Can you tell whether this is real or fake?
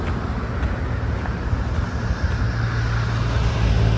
real